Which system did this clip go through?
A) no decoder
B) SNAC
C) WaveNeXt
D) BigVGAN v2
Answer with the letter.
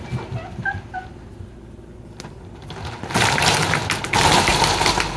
A